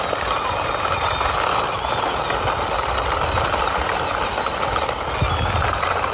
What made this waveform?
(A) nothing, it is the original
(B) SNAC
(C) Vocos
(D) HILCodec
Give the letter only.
A